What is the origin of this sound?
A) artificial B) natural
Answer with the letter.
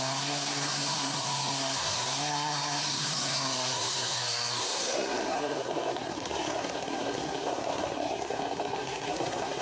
A